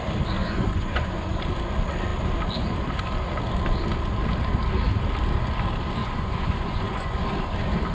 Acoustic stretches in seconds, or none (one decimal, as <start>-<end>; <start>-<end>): 0.0-0.4; 1.4-6.0; 7.2-7.9